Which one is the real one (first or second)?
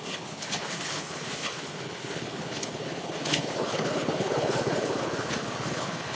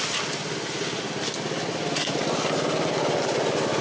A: second